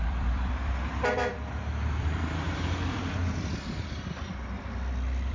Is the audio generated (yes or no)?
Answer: yes